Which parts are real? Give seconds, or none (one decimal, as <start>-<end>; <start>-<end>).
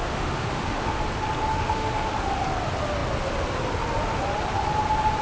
1.0-1.5; 2.1-5.2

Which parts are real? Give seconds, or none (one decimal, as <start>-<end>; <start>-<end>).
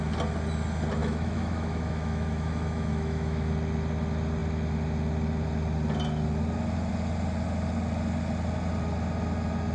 0.0-1.0; 3.5-9.7